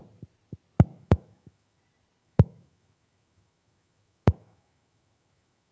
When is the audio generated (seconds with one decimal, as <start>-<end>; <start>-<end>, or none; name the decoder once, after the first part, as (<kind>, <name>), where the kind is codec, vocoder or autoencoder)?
0.9-1.8 (autoencoder, DAC-VAE); 2.2-5.7